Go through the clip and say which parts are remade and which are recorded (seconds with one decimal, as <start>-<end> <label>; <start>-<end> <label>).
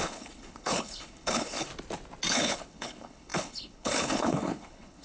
0.0-1.7 remade; 1.7-2.3 recorded; 2.3-5.0 remade